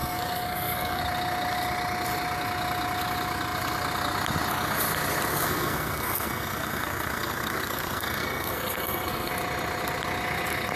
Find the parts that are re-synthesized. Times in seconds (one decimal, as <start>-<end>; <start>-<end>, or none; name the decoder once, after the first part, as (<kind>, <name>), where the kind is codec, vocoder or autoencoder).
0.0-1.0 (codec, SNAC); 5.3-9.3

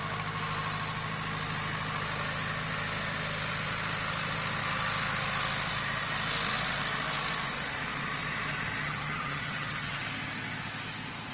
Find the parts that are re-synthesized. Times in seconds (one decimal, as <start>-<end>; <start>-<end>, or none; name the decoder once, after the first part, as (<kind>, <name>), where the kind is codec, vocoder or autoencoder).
8.8-10.0 (vocoder, HiFi-GAN)

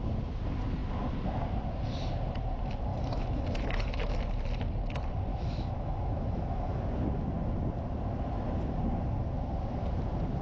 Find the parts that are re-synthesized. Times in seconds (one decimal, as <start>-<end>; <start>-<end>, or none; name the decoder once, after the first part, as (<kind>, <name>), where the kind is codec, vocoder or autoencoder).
2.9-4.1 (autoencoder, DAC-VAE); 5.3-6.8

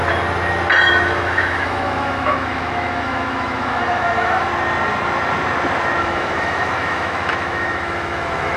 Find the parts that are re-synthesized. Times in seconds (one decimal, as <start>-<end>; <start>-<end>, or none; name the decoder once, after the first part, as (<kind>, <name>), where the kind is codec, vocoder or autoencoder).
0.9-4.5 (autoencoder, DAC-VAE); 6.0-8.6